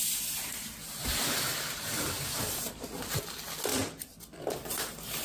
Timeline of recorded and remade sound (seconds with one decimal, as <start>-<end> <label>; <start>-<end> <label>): 0.0-1.2 recorded; 1.2-2.7 remade; 2.7-3.7 recorded; 3.7-4.5 remade; 4.5-5.2 recorded